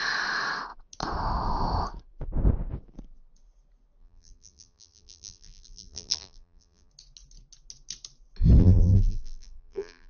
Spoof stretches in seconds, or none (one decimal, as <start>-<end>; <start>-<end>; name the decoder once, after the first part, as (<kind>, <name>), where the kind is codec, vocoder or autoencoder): 4.0-6.9 (vocoder, BigVGAN v2); 8.6-10.1